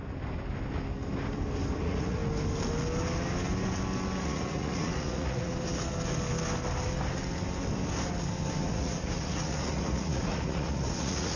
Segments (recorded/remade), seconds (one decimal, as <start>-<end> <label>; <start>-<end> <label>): 0.0-1.8 recorded; 1.8-2.2 remade; 2.2-4.2 recorded; 4.2-5.5 remade; 5.5-8.7 recorded; 8.7-11.4 remade